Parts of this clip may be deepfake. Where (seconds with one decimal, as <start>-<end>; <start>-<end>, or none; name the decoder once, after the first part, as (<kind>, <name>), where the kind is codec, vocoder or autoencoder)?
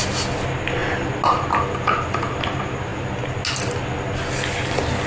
none